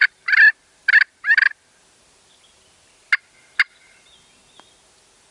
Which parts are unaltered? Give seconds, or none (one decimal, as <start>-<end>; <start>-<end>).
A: 0.0-5.3